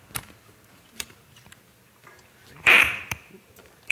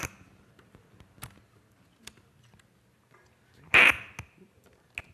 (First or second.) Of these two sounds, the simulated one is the first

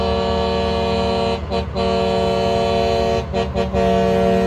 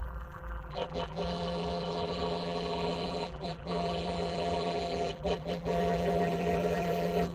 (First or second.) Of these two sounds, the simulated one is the second